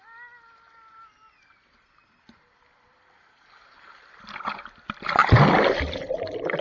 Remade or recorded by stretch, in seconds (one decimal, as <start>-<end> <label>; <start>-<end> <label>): 0.0-5.2 recorded; 5.2-6.6 remade